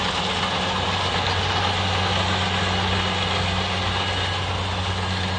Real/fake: real